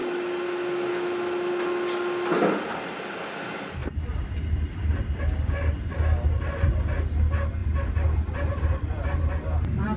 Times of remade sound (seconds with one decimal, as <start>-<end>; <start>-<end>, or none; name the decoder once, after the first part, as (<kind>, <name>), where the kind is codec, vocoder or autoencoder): 3.8-4.9 (vocoder, BigVGAN v2); 7.6-9.2